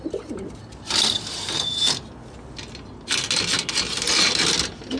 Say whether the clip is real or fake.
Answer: real